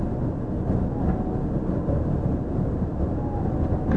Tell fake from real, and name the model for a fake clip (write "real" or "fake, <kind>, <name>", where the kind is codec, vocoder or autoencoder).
real